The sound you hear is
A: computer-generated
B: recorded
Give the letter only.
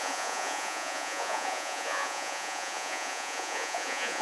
A